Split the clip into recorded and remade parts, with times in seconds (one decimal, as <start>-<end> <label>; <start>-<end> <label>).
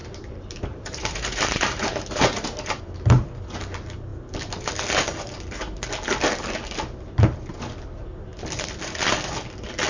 0.0-2.8 remade; 2.8-9.9 recorded